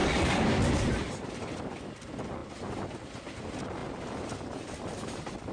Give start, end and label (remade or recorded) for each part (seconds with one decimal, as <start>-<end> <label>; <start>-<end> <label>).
0.0-2.4 remade; 2.4-3.1 recorded; 3.1-3.8 remade; 3.8-4.8 recorded; 4.8-5.5 remade

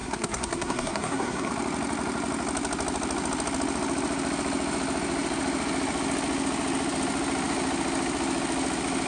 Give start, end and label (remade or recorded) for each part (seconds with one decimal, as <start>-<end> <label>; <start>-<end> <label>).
0.0-1.5 remade; 1.5-9.1 recorded

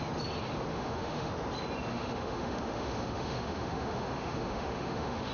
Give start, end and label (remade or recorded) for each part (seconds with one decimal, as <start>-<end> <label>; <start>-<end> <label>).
0.0-0.7 recorded; 0.7-1.3 remade; 1.3-1.9 recorded; 1.9-5.3 remade

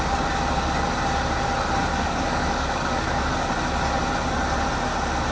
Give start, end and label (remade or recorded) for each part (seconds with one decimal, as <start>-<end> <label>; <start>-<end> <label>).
0.0-1.9 recorded; 1.9-3.3 remade; 3.3-5.3 recorded

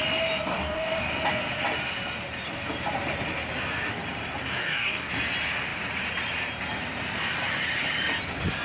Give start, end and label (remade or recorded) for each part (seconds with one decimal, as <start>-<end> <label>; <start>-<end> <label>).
0.0-0.5 recorded; 0.5-1.1 remade; 1.1-4.4 recorded; 4.4-5.1 remade; 5.1-8.6 recorded

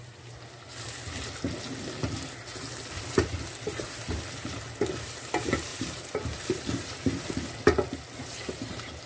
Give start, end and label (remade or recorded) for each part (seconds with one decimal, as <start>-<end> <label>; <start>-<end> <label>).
0.0-5.7 recorded; 5.7-7.3 remade; 7.3-9.1 recorded

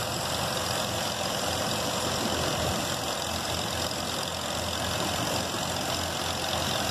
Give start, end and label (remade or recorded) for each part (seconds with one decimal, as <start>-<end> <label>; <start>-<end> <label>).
0.0-1.9 remade; 1.9-6.9 recorded